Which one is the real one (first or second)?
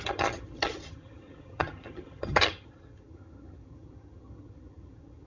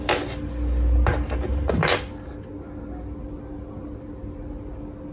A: second